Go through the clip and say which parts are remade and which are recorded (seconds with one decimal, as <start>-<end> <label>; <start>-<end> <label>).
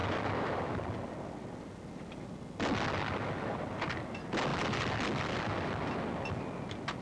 0.0-7.0 recorded